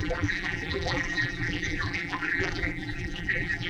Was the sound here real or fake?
fake